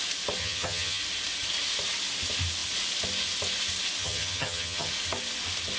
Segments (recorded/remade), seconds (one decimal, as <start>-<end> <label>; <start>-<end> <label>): 0.0-0.4 recorded; 0.4-1.0 remade; 1.0-4.0 recorded; 4.0-4.9 remade; 4.9-5.8 recorded